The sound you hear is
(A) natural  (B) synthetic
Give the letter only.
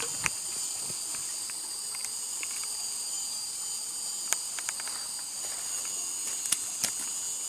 A